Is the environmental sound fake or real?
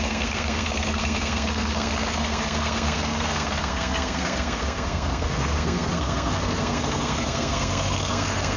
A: fake